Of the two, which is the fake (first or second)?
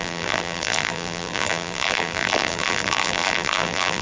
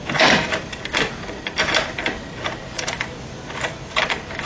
first